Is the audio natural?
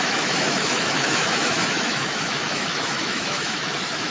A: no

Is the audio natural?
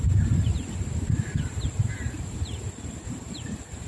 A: yes